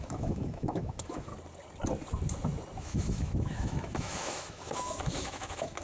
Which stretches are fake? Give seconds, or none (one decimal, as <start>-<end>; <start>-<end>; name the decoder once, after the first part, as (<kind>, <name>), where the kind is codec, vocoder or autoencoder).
0.0-1.3 (autoencoder, DAC-VAE); 2.8-5.8